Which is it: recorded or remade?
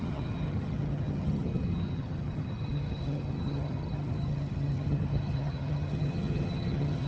remade